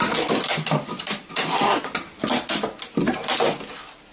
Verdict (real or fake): real